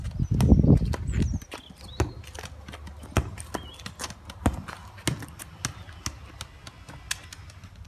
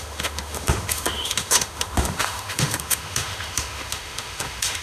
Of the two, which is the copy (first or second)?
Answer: second